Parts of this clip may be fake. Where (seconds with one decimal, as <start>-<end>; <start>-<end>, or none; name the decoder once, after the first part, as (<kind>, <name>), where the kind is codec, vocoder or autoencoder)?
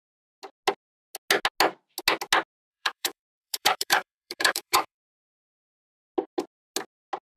2.7-5.5 (autoencoder, DAC-VAE)